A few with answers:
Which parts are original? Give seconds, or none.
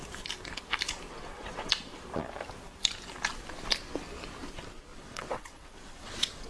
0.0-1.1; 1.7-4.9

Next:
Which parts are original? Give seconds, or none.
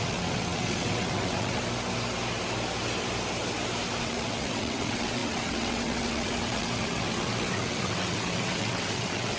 1.6-4.0